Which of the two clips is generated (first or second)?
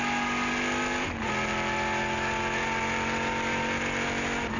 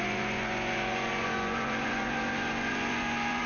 second